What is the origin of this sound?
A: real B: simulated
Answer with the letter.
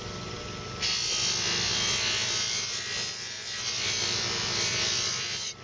A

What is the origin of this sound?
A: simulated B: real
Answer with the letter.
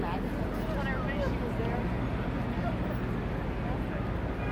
B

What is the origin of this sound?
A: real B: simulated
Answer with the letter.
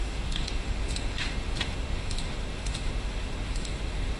B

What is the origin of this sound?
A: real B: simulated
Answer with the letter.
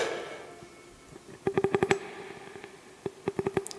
A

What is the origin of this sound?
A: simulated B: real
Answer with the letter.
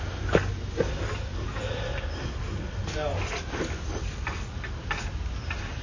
B